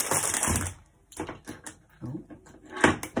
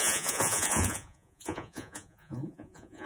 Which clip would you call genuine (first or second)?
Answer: first